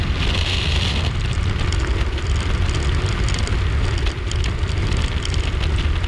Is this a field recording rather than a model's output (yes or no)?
yes